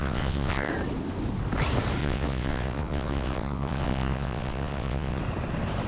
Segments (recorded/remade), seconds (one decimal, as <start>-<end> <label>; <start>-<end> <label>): 0.0-0.7 remade; 0.7-2.0 recorded; 2.0-5.2 remade; 5.2-5.9 recorded